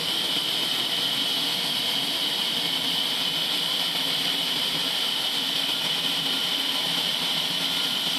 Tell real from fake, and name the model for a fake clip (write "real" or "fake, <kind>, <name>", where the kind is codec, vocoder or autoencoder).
real